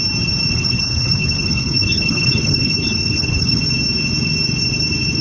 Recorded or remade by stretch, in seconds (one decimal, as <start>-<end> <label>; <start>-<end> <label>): 0.0-0.5 recorded; 0.5-3.6 remade; 3.6-5.2 recorded

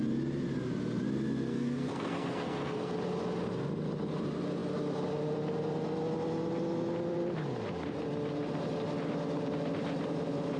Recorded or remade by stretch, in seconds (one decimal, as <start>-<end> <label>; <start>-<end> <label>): 0.0-1.5 recorded; 1.5-2.9 remade; 2.9-10.6 recorded